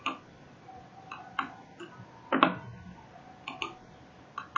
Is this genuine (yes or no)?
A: yes